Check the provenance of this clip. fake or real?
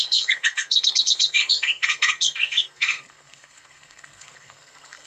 fake